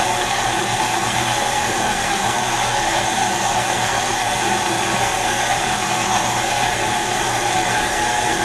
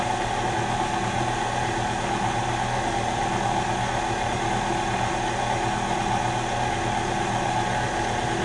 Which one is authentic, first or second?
second